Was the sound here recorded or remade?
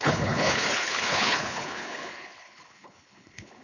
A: remade